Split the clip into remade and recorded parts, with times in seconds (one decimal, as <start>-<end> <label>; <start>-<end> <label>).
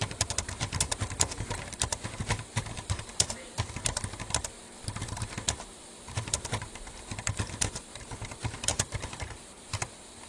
0.0-10.3 remade